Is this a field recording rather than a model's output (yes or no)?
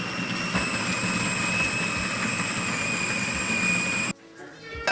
yes